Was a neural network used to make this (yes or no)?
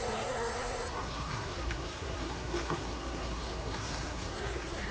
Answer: yes